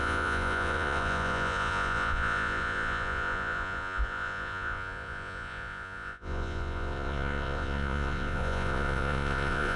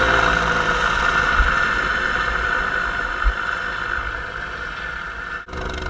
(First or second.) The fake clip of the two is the first